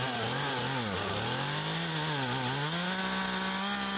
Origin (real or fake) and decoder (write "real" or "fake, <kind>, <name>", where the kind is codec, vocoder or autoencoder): real